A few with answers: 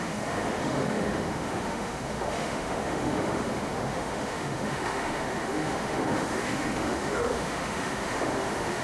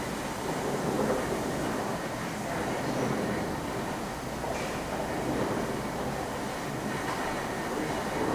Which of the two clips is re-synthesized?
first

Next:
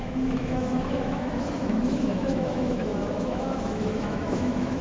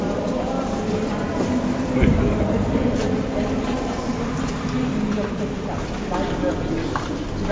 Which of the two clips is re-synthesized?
first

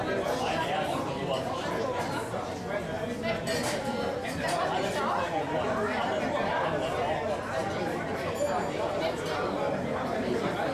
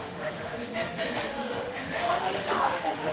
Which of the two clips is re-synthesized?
second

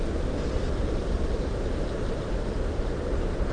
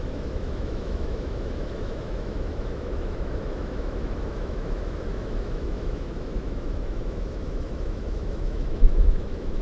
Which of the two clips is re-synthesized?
second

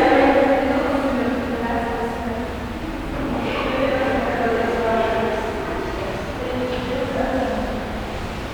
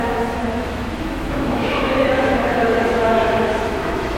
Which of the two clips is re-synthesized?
second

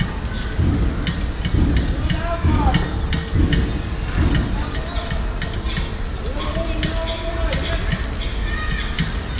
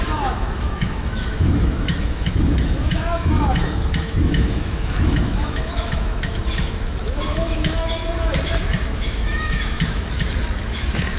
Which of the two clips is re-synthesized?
second